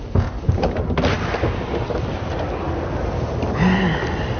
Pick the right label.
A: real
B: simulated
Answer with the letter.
A